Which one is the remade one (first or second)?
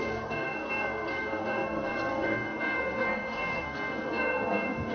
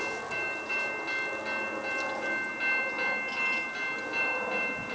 first